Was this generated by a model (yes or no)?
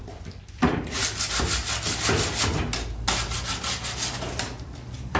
no